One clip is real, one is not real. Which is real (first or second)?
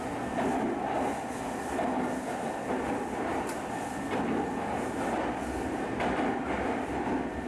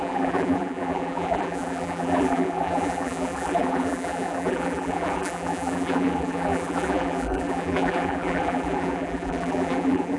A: first